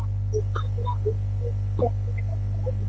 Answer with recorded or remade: recorded